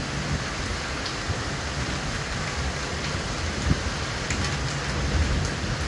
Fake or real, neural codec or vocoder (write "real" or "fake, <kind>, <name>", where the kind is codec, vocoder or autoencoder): real